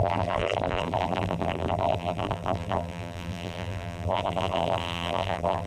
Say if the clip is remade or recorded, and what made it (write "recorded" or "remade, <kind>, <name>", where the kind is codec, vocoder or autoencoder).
remade, vocoder, BigVGAN v2